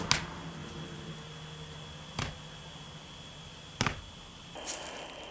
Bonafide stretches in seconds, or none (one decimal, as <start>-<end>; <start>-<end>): 0.0-5.3